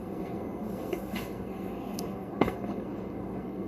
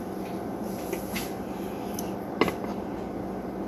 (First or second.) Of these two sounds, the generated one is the first